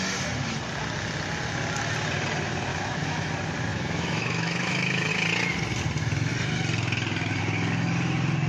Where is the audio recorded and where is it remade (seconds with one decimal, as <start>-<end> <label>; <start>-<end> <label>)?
0.0-2.7 recorded; 2.7-3.3 remade; 3.3-3.7 recorded; 3.7-5.1 remade; 5.1-8.5 recorded

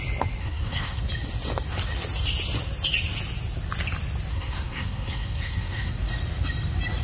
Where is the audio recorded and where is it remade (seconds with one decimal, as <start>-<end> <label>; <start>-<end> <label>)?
0.0-0.4 recorded; 0.4-1.0 remade; 1.0-4.3 recorded; 4.3-5.9 remade; 5.9-7.0 recorded

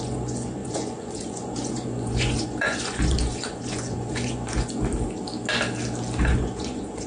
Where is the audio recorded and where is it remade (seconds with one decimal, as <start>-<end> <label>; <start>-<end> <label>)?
0.0-4.8 remade; 4.8-6.2 recorded; 6.2-7.1 remade